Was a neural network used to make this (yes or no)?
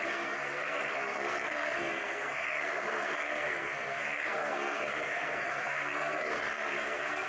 yes